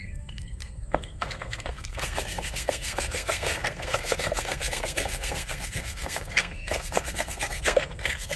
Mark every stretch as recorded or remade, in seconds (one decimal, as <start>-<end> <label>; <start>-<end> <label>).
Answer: 0.0-8.4 remade